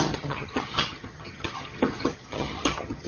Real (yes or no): no